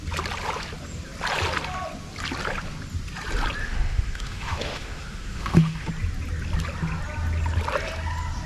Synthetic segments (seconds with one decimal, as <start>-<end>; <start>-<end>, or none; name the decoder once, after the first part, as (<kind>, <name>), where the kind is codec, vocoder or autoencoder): 3.6-5.9 (autoencoder, DAC-VAE)